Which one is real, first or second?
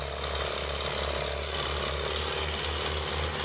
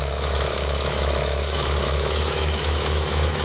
first